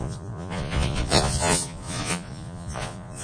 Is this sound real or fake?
fake